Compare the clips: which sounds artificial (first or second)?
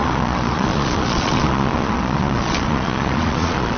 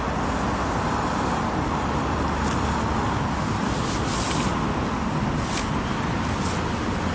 first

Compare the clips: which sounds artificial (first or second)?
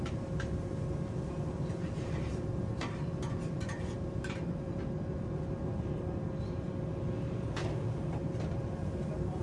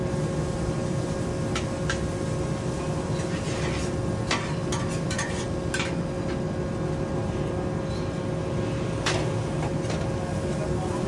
first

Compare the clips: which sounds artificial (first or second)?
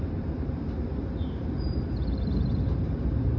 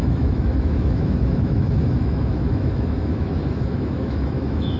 second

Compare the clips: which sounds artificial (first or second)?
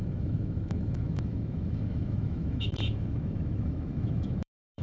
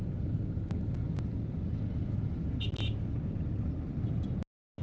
first